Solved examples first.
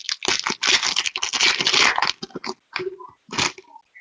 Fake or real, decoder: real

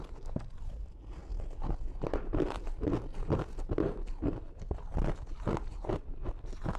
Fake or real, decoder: real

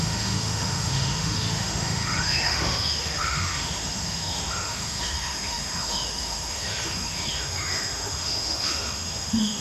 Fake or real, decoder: fake, autoencoder, DAC-VAE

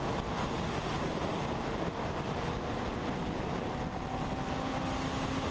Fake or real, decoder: real